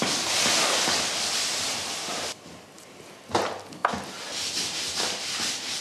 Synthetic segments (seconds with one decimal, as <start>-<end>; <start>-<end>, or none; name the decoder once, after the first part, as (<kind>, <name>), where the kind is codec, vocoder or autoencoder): none